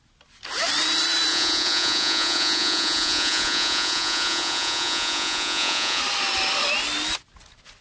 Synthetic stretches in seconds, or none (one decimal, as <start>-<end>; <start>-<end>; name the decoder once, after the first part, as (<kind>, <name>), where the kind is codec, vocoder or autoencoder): 1.3-6.0 (vocoder, Vocos)